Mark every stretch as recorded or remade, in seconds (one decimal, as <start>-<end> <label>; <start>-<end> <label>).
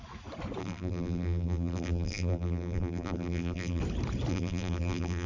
0.0-0.6 recorded; 0.6-3.8 remade; 3.8-4.3 recorded; 4.3-5.3 remade